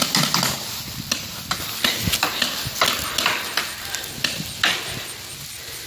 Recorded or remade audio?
recorded